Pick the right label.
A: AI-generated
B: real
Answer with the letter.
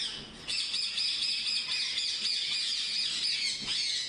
A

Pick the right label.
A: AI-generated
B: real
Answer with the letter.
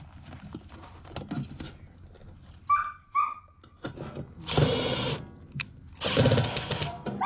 B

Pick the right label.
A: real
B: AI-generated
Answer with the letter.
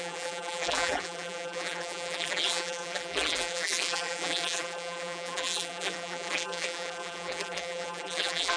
B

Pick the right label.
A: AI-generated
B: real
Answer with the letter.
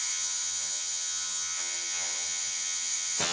A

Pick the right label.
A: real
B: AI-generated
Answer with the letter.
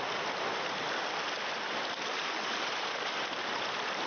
A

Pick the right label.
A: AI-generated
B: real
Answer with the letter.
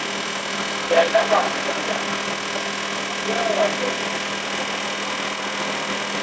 B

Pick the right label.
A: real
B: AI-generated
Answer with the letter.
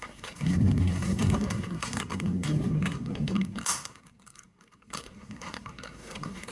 B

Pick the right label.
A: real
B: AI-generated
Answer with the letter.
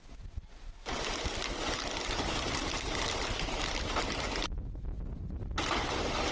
A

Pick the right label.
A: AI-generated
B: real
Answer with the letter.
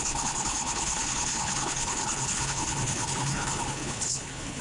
A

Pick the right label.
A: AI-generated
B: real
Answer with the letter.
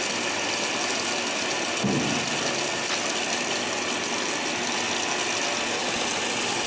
B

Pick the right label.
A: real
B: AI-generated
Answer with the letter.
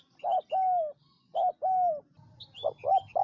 A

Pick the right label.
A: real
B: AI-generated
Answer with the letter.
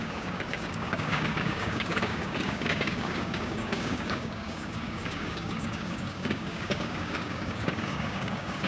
B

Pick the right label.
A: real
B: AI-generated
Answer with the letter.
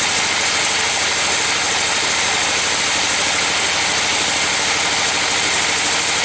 A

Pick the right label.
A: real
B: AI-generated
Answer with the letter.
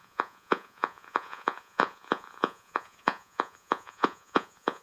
B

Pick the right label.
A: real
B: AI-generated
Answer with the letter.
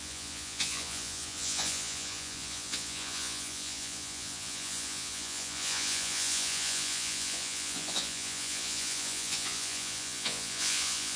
B